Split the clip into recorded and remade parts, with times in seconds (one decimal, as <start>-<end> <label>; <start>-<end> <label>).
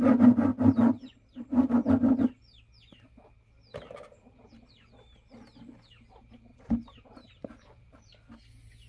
0.0-0.5 recorded; 0.5-1.9 remade; 1.9-6.5 recorded; 6.5-8.1 remade; 8.1-8.9 recorded